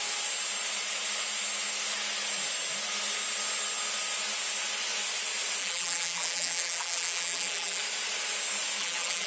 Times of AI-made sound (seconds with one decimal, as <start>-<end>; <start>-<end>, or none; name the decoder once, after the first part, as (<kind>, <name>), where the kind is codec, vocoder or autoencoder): 5.6-7.8 (vocoder, BigVGAN v2); 8.8-9.3